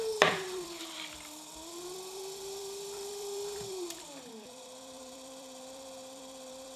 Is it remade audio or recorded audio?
remade